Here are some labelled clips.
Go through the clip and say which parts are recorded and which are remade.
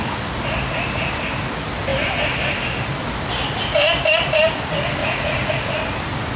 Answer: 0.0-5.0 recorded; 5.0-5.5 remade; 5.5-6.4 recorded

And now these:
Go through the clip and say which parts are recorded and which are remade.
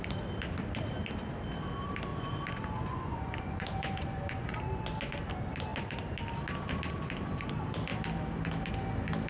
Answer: 0.0-2.1 recorded; 2.1-4.6 remade; 4.6-9.3 recorded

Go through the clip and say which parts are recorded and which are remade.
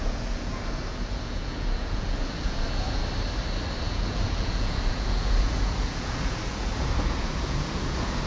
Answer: 0.0-3.0 remade; 3.0-3.8 recorded; 3.8-8.3 remade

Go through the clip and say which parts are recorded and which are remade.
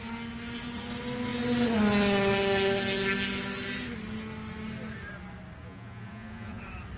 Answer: 0.0-5.6 recorded; 5.6-6.6 remade; 6.6-7.0 recorded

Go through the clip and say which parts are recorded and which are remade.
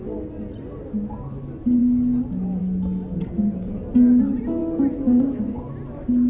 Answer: 0.0-6.3 recorded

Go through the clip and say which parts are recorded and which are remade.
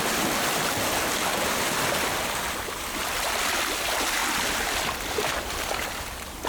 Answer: 0.0-6.5 recorded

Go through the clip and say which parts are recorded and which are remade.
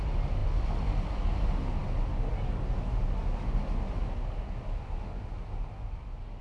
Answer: 0.0-6.4 recorded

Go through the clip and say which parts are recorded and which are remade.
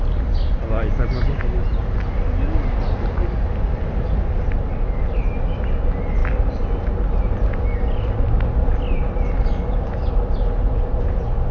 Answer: 0.0-11.5 recorded